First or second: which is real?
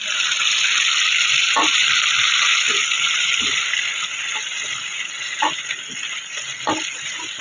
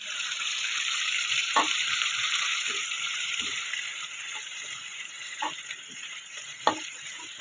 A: first